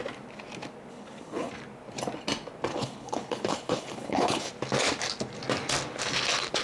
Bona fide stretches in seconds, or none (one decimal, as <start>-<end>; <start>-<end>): 0.0-0.9; 1.5-2.7; 4.5-6.6